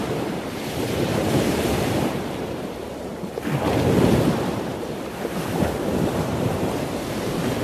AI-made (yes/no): yes